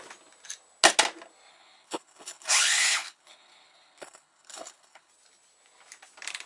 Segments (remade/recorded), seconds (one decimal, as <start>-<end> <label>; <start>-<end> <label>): 0.0-1.5 recorded; 1.5-5.1 remade; 5.1-6.5 recorded